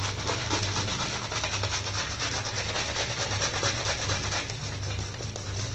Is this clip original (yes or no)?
yes